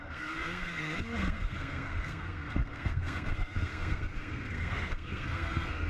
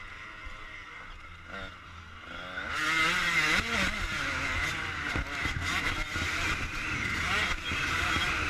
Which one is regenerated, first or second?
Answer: first